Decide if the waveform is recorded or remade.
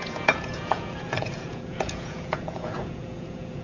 remade